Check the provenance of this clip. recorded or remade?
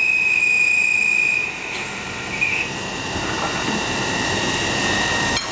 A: remade